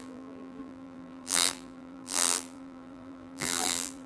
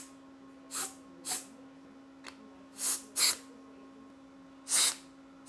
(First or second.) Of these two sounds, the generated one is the first